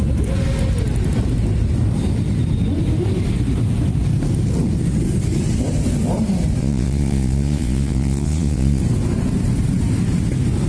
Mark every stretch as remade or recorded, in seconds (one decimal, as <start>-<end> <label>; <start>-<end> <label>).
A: 0.0-6.6 recorded; 6.6-8.8 remade; 8.8-10.7 recorded